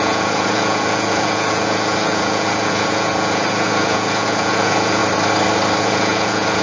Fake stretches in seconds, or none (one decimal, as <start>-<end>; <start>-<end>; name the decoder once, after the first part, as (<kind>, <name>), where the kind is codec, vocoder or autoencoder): 0.0-5.0 (vocoder, Vocos); 5.8-6.6